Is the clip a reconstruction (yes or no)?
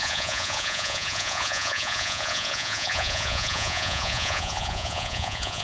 yes